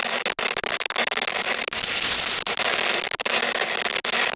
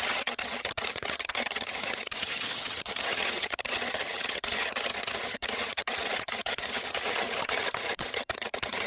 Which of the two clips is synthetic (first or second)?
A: second